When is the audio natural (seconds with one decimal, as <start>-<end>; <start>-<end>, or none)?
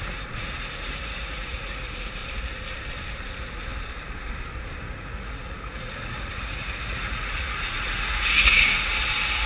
2.2-4.8